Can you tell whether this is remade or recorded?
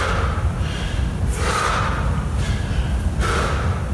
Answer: recorded